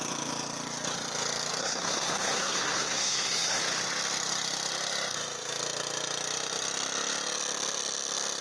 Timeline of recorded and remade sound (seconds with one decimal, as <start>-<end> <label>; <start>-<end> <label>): 0.0-1.6 recorded; 1.6-3.6 remade; 3.6-8.4 recorded